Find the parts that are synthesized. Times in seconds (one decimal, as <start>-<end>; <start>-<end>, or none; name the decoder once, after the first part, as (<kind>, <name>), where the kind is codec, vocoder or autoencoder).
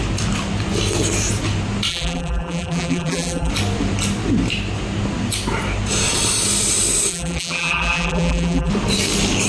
1.9-3.5 (vocoder, BigVGAN v2); 7.1-8.7